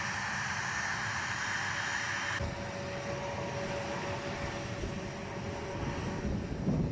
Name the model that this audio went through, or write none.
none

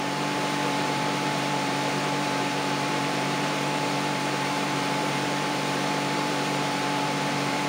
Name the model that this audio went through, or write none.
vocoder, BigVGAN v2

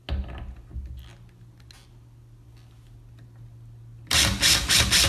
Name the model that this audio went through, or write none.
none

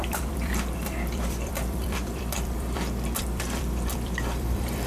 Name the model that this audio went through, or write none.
vocoder, BigVGAN v2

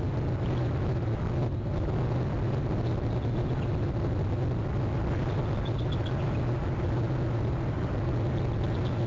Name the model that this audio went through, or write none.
none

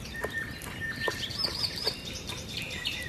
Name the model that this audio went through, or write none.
vocoder, BigVGAN v2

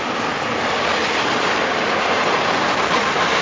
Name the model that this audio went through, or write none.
vocoder, BigVGAN v2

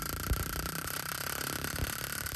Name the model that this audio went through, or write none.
vocoder, BigVGAN v2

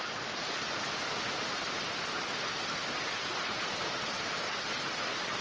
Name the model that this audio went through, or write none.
none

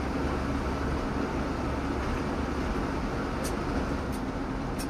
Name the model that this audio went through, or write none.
none